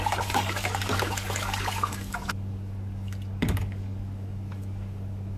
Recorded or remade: remade